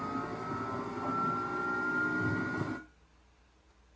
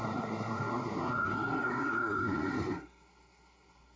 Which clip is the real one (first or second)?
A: first